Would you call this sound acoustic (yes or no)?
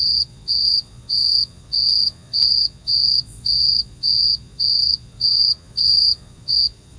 no